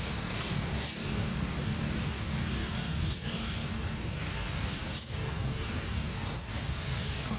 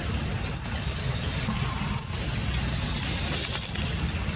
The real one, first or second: second